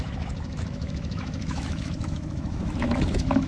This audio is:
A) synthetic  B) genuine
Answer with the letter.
A